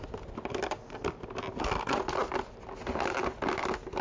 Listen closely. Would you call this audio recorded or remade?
recorded